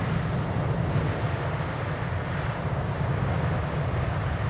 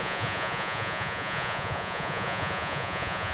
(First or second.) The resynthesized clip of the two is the second